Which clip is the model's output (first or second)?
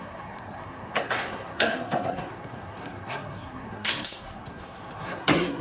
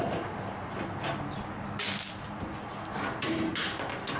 first